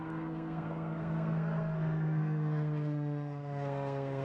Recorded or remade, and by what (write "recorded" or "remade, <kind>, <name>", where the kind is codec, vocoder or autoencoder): remade, codec, SNAC